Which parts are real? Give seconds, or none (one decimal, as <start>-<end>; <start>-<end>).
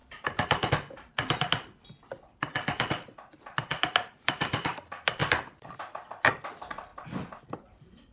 0.0-3.1; 4.8-8.1